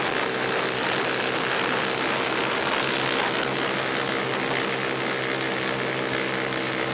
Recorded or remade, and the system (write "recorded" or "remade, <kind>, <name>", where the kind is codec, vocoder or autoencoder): recorded